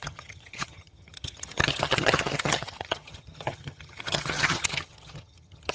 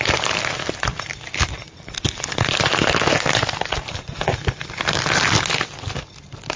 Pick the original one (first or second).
second